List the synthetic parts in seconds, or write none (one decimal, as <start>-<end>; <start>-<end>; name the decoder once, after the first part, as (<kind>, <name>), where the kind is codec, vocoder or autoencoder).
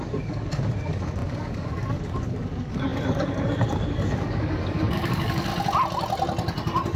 0.0-5.5 (codec, DAC)